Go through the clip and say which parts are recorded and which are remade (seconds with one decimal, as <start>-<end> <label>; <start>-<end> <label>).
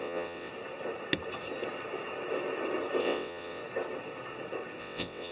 0.0-0.5 remade; 0.5-3.0 recorded; 3.0-3.6 remade; 3.6-4.8 recorded; 4.8-5.3 remade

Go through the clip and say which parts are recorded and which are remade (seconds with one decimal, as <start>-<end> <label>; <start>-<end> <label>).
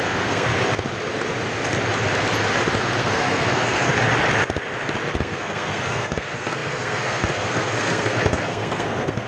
0.0-0.5 remade; 0.5-3.0 recorded; 3.0-3.9 remade; 3.9-5.2 recorded; 5.2-9.3 remade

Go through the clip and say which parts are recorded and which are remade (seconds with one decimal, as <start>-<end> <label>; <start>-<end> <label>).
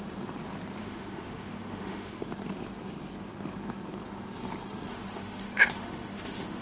0.0-0.8 recorded; 0.8-2.2 remade; 2.2-4.9 recorded; 4.9-6.6 remade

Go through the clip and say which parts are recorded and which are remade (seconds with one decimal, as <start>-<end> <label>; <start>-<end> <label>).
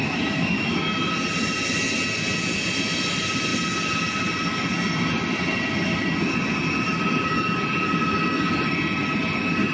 0.0-1.1 remade; 1.1-9.7 recorded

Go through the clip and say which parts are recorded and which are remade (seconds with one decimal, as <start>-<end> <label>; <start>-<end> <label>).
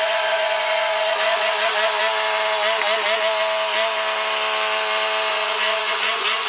0.0-2.0 remade; 2.0-5.3 recorded; 5.3-6.5 remade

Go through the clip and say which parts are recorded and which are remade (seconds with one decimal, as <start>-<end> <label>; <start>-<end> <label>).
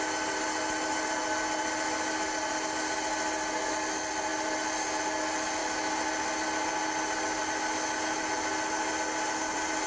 0.0-9.9 recorded